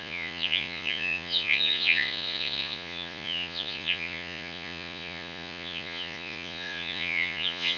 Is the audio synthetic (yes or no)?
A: yes